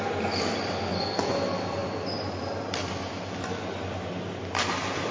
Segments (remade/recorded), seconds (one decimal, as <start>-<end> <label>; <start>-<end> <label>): 0.0-5.1 recorded